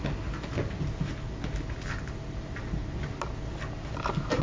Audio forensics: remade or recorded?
recorded